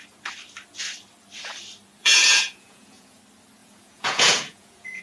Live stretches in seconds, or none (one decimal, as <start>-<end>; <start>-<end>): 0.0-2.0; 3.2-3.6